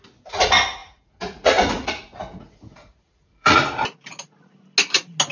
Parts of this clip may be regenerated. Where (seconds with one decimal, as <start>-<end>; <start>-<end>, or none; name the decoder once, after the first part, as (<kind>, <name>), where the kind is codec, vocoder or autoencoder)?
0.8-4.0 (vocoder, Vocos)